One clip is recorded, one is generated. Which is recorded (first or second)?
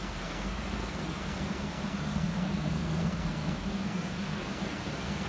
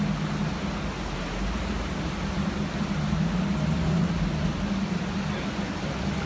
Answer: second